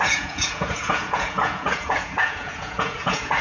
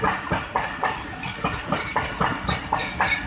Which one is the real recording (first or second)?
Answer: second